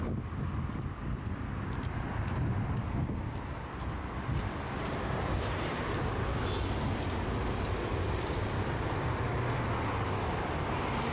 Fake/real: real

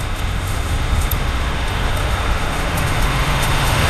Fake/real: fake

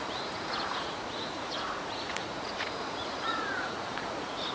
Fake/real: fake